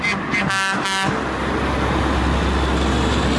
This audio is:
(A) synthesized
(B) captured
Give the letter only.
B